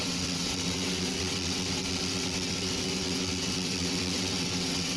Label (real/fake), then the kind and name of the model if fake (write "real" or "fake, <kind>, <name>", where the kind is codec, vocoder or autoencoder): fake, vocoder, WaveNeXt